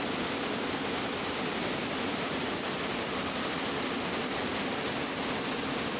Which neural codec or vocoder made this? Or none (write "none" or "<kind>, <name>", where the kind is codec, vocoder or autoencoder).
none